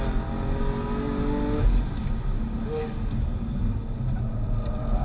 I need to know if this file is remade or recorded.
recorded